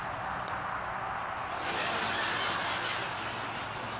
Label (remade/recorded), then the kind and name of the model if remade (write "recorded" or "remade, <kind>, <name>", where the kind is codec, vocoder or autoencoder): recorded